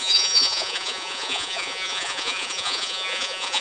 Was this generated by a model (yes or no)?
yes